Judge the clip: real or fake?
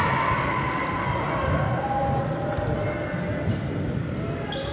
real